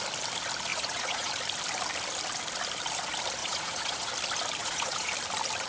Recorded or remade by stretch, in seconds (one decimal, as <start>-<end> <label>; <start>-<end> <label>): 0.0-0.7 recorded; 0.7-1.3 remade; 1.3-3.4 recorded; 3.4-4.1 remade; 4.1-4.6 recorded; 4.6-5.1 remade; 5.1-5.7 recorded

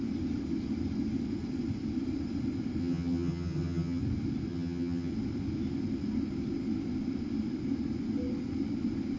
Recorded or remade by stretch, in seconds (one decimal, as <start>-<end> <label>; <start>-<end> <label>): 0.0-2.8 recorded; 2.8-4.0 remade; 4.0-4.5 recorded; 4.5-5.1 remade; 5.1-9.2 recorded

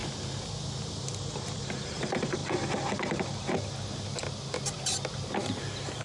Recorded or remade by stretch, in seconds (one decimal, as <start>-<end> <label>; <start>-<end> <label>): 0.0-1.9 recorded; 1.9-2.4 remade; 2.4-5.4 recorded; 5.4-6.0 remade

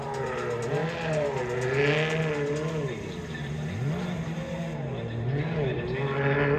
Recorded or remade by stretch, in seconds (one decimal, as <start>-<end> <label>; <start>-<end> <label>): 0.0-6.6 recorded

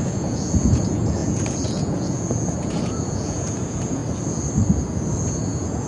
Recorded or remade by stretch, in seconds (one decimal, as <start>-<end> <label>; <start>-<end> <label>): 0.0-4.0 remade; 4.0-5.3 recorded; 5.3-5.9 remade

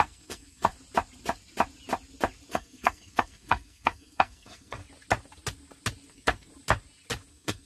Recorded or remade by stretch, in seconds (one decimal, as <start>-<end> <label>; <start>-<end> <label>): 0.0-0.7 remade; 0.7-2.5 recorded; 2.5-4.8 remade; 4.8-6.1 recorded; 6.1-6.5 remade; 6.5-7.3 recorded; 7.3-7.7 remade

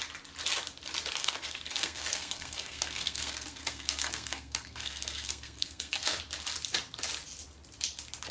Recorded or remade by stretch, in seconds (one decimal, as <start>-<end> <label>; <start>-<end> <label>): 0.0-1.2 recorded; 1.2-6.2 remade; 6.2-8.3 recorded